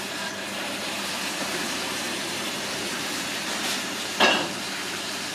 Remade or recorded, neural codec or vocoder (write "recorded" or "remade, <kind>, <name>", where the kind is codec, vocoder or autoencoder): remade, vocoder, BigVGAN v2